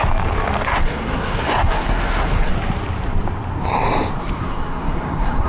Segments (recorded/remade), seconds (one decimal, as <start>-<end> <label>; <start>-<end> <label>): 0.0-0.7 recorded; 0.7-2.5 remade; 2.5-4.2 recorded; 4.2-5.5 remade